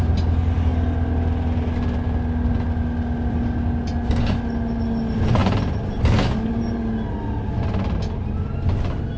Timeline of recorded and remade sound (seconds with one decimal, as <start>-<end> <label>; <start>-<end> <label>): 0.0-9.2 recorded

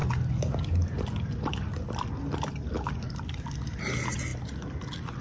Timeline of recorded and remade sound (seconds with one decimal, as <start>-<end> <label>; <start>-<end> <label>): 0.0-5.2 recorded

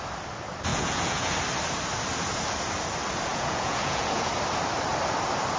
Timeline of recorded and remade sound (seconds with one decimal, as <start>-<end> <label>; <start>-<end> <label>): 0.0-0.7 recorded; 0.7-1.3 remade; 1.3-3.3 recorded; 3.3-4.3 remade; 4.3-5.6 recorded